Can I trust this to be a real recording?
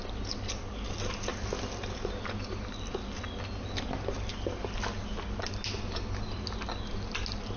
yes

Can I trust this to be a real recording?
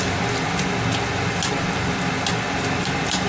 yes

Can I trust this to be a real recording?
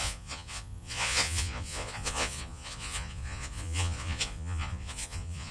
no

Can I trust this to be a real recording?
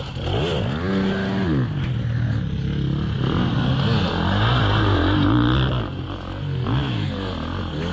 yes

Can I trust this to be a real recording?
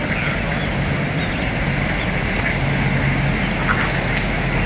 yes